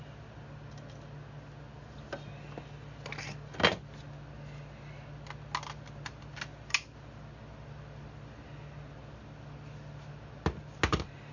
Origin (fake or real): real